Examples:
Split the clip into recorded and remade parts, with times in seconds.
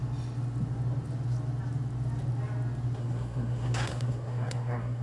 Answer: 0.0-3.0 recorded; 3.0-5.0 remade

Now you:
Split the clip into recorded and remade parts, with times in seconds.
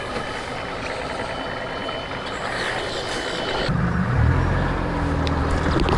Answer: 0.0-6.0 recorded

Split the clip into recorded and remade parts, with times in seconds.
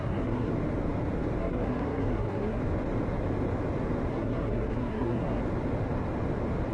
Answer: 0.0-0.5 remade; 0.5-1.4 recorded; 1.4-2.6 remade; 2.6-4.1 recorded; 4.1-5.4 remade; 5.4-6.7 recorded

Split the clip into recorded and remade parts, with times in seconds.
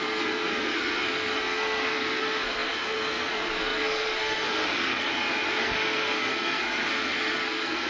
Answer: 0.0-5.1 remade; 5.1-5.6 recorded; 5.6-7.9 remade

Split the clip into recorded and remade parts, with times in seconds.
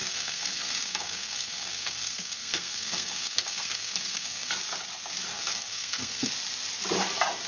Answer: 0.0-4.5 remade; 4.5-5.3 recorded; 5.3-6.3 remade; 6.3-7.5 recorded